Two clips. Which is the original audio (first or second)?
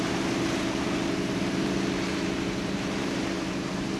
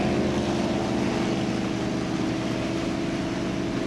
second